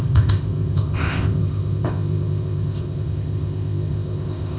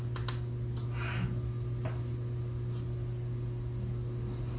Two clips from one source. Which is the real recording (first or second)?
second